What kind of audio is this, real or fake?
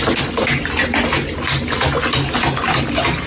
real